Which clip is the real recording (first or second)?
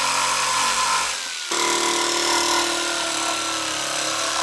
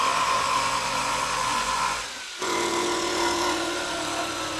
first